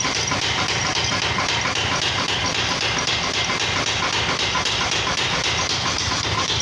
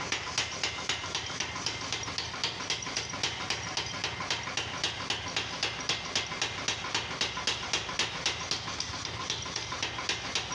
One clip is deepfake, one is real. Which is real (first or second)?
second